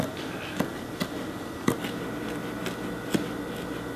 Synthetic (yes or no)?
no